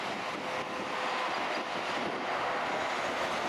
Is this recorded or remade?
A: recorded